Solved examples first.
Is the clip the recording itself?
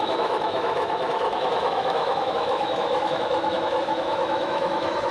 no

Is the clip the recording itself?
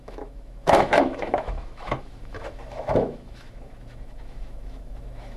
no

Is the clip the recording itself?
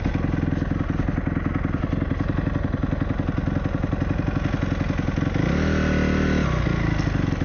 yes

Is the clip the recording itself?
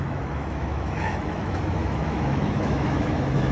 no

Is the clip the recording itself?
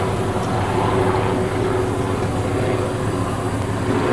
yes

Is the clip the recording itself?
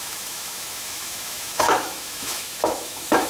no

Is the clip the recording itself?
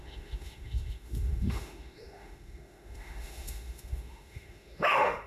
no